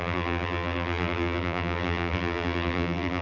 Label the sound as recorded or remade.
remade